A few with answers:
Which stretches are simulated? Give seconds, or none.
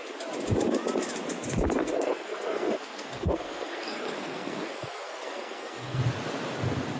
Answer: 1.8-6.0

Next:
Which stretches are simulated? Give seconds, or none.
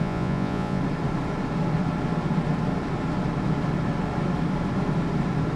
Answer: 0.0-0.8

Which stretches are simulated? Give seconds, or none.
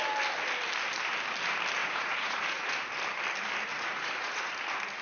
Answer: 1.8-2.7; 3.7-4.5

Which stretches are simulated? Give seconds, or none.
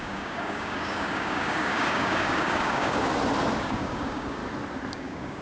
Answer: 0.0-3.1; 3.6-4.4; 4.9-5.4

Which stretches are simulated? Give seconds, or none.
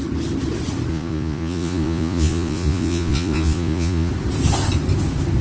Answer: 0.9-4.1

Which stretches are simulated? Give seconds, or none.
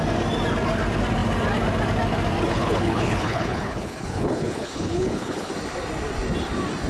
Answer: 2.5-5.5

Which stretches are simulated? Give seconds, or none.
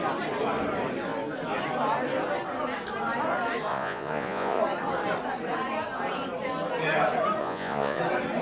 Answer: 3.7-4.6; 7.4-8.0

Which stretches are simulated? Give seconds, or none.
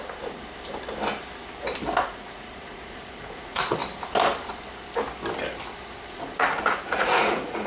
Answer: 2.0-3.8; 6.1-7.7